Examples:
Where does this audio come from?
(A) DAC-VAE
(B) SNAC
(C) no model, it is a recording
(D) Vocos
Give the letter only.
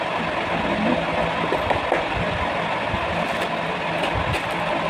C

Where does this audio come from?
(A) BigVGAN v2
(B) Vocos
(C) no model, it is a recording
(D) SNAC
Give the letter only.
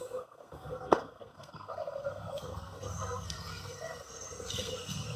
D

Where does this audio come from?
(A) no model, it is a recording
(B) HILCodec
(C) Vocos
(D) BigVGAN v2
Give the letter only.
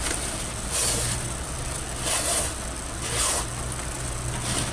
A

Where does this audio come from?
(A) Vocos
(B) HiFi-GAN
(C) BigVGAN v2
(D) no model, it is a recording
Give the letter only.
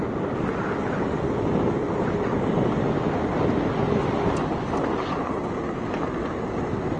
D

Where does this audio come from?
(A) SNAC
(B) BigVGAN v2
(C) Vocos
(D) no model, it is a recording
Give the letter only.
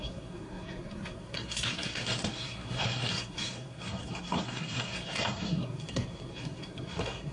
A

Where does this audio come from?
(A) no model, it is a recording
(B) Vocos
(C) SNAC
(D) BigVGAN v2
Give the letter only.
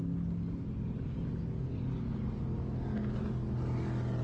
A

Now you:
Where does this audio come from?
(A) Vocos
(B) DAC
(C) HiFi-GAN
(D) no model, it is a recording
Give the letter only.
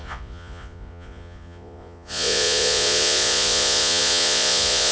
A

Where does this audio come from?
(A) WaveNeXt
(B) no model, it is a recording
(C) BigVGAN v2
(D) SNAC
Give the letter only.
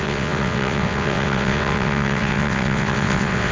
A